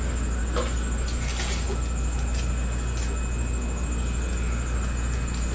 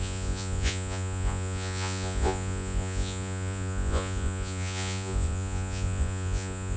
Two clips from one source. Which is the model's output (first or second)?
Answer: second